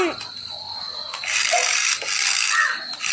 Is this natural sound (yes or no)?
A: yes